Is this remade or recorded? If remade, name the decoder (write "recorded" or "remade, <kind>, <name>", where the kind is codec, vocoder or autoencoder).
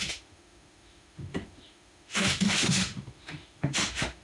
remade, autoencoder, DAC-VAE